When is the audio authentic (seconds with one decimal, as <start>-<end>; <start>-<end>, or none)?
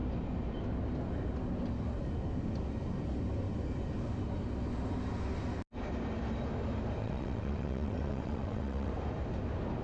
0.0-7.0; 8.9-9.8